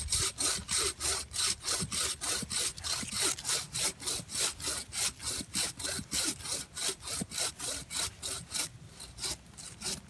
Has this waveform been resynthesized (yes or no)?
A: no